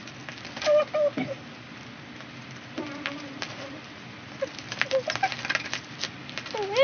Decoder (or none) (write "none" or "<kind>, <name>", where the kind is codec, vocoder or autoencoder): none